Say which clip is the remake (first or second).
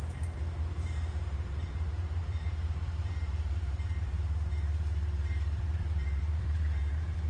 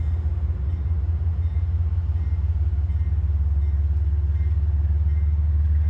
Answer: first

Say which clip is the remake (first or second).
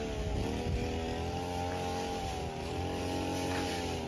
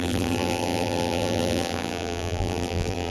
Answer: second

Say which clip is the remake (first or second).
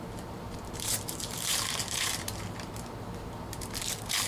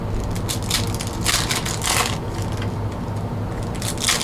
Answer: first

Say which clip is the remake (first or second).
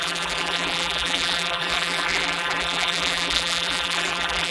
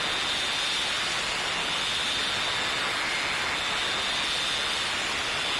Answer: first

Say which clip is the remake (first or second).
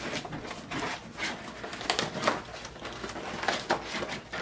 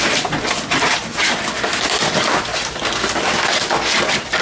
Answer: second